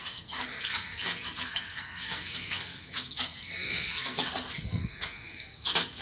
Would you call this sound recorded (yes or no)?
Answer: no